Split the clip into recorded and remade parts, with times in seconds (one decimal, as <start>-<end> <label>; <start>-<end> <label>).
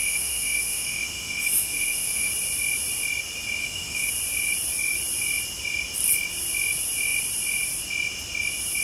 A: 0.0-2.3 remade; 2.3-3.6 recorded; 3.6-4.1 remade; 4.1-8.8 recorded